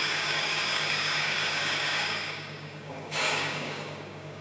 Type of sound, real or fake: fake